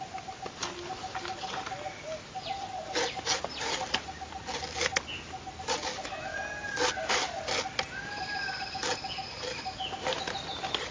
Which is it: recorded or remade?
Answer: recorded